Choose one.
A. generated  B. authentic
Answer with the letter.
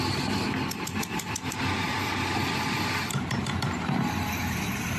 B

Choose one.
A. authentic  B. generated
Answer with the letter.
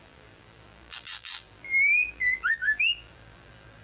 B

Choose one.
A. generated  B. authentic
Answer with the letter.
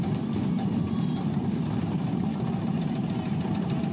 B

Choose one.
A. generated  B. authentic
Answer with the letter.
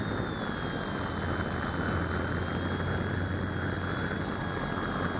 B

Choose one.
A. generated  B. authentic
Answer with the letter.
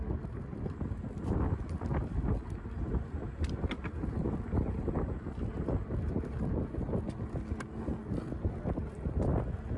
B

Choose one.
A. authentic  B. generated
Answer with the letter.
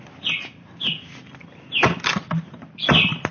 A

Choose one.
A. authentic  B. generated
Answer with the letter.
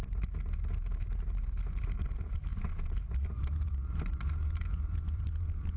B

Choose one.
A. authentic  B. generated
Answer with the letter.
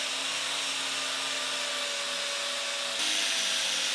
A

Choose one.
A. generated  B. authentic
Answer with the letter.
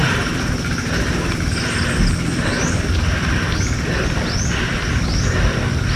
B